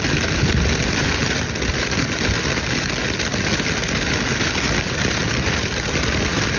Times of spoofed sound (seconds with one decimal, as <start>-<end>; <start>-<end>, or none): none

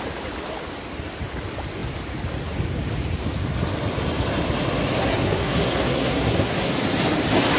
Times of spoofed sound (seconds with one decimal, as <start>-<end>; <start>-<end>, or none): 5.0-6.7

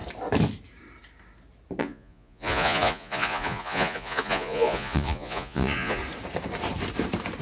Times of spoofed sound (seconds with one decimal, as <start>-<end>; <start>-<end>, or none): 1.8-6.0

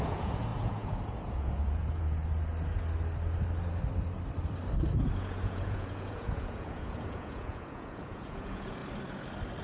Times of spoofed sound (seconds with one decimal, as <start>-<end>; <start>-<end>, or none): 0.0-2.2; 5.1-8.8

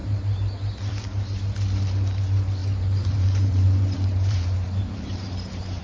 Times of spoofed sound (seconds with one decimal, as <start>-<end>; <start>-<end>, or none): 2.6-5.8

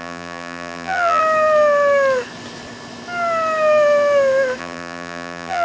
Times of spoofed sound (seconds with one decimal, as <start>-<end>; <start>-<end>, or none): 0.0-1.2; 4.6-5.6

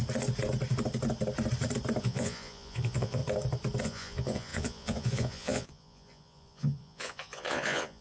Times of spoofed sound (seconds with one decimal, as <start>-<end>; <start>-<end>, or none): 2.0-3.2; 3.8-8.0

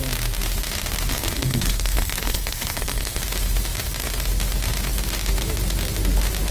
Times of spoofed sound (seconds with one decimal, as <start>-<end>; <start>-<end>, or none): 1.1-3.2